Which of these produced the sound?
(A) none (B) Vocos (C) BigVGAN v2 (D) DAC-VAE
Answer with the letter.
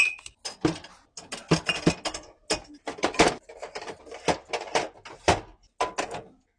A